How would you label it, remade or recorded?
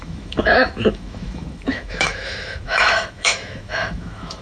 remade